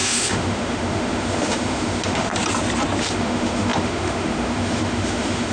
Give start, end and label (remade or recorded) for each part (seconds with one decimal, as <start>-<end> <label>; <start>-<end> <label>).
0.0-2.3 remade; 2.3-3.0 recorded; 3.0-5.5 remade